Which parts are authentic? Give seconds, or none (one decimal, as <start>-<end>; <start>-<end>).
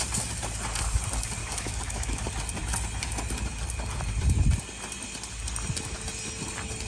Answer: 0.0-1.4; 2.3-6.9